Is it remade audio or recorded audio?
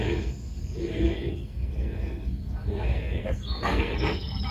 remade